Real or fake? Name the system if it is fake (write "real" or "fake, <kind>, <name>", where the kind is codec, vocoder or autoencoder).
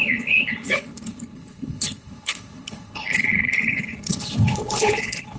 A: fake, codec, HILCodec